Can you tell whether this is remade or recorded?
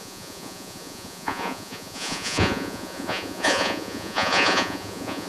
remade